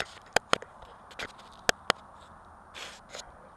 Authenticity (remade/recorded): recorded